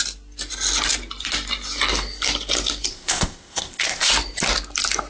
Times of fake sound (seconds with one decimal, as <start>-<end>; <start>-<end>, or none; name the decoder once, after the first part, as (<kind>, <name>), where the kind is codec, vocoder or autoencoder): 2.9-4.1 (codec, ZipCodec)

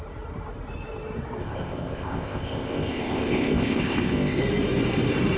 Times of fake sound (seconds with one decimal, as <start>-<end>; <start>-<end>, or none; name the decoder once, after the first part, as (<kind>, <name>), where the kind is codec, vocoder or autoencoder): 1.4-4.4 (codec, ZipCodec)

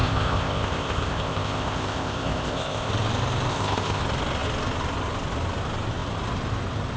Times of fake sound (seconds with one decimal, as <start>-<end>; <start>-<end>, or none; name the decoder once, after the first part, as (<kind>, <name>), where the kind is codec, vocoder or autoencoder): 0.0-2.9 (codec, ZipCodec); 3.5-4.0

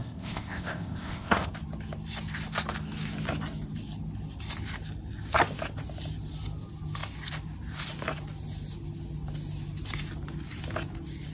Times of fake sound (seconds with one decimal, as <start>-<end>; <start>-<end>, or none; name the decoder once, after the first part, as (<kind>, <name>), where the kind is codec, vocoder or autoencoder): 0.0-1.5 (codec, ZipCodec)